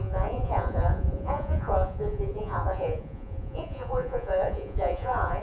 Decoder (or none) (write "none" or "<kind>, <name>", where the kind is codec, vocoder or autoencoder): vocoder, Vocos